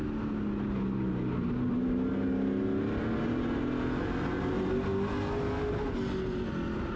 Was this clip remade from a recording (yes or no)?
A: no